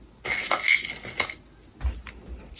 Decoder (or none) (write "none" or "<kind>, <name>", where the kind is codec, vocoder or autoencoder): none